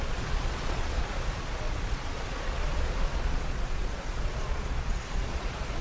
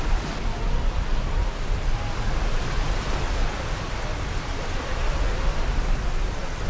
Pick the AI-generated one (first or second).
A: first